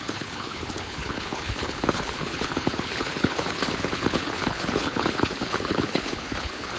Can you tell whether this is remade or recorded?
remade